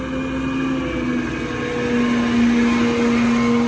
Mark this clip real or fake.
real